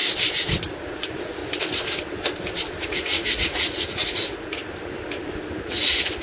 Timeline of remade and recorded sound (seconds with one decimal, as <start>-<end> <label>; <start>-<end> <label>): 0.0-0.9 recorded; 0.9-1.4 remade; 1.4-2.8 recorded; 2.8-4.6 remade; 4.6-5.6 recorded; 5.6-6.2 remade